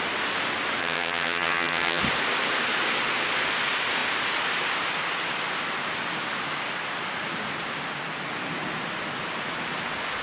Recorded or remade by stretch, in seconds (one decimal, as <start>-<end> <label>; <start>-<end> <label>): 0.0-0.8 recorded; 0.8-2.0 remade; 2.0-10.2 recorded